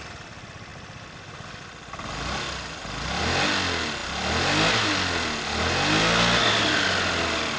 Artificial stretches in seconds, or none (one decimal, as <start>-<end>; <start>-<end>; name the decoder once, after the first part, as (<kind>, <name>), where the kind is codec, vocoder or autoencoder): none